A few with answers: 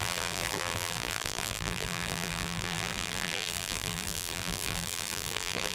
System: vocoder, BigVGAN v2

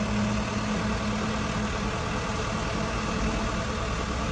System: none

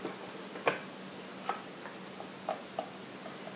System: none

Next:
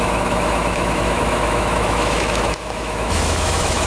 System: autoencoder, DAC-VAE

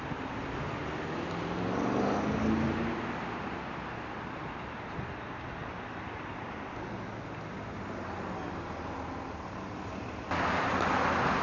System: none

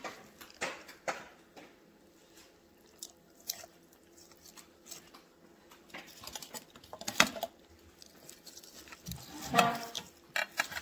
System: vocoder, BigVGAN v2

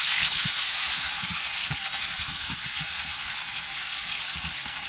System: codec, SNAC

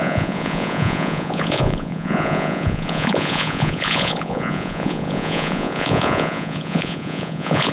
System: vocoder, Vocos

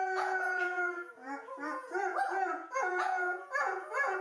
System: vocoder, Vocos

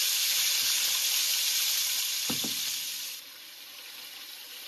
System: none